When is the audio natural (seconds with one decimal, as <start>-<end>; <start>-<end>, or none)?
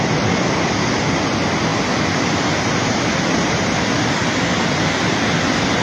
none